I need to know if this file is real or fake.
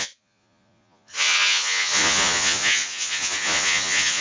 fake